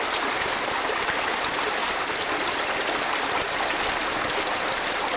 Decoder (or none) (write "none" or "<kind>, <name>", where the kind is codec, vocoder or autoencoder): none